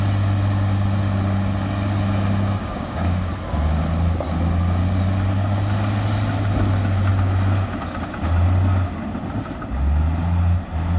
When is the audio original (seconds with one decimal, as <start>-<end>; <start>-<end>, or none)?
0.0-2.6; 3.3-11.0